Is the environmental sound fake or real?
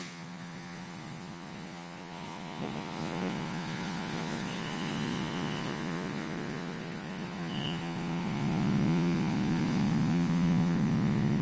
fake